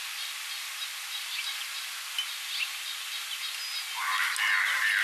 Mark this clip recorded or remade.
recorded